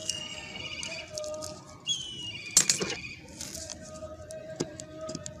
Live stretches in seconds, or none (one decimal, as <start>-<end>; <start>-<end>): 0.6-5.4

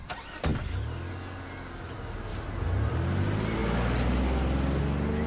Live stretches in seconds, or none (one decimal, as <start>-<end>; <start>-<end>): 0.0-5.3

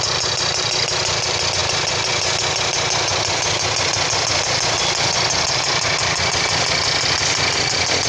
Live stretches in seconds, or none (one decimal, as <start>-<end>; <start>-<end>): 0.0-8.1

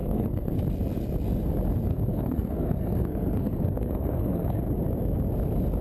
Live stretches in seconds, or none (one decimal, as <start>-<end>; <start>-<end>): 0.6-1.9; 4.6-5.8